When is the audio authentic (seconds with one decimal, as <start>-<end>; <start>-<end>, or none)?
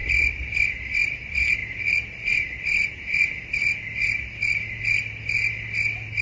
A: 0.0-6.2